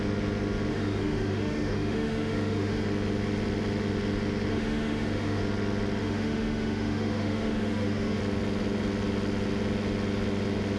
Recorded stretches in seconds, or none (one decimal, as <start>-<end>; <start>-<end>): 0.0-0.7; 2.8-4.5; 5.4-6.0; 8.2-10.8